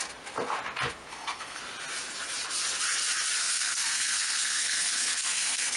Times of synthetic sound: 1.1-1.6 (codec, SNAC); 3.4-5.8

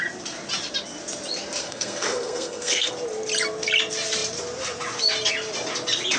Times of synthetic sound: 1.6-2.9 (codec, SNAC)

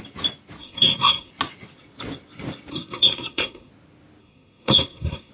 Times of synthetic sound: 0.6-1.3 (codec, SNAC); 2.7-3.7; 4.2-5.3

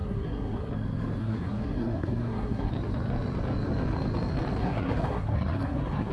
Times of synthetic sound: 0.0-0.7 (codec, SNAC); 1.2-2.7; 4.6-6.1

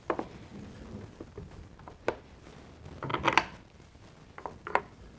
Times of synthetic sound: none